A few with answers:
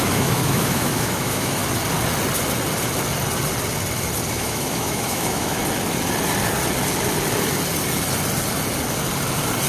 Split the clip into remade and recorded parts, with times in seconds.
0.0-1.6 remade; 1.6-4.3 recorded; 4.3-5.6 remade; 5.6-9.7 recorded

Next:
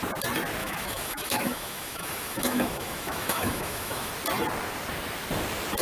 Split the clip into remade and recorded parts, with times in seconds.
0.0-0.6 recorded; 0.6-4.1 remade; 4.1-5.8 recorded